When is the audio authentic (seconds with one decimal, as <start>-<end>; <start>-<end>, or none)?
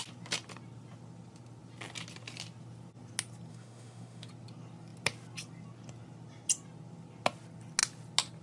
0.0-3.5; 4.3-8.4